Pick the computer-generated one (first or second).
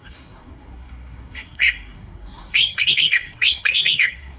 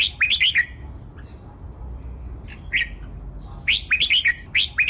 first